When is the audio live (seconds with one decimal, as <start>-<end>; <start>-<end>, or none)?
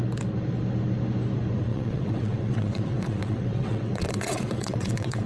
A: 0.0-1.7